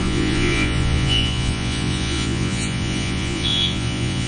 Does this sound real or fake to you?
fake